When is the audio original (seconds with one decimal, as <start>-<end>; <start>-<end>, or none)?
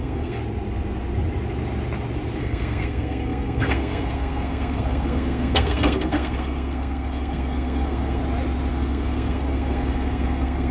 0.4-2.4; 8.2-8.7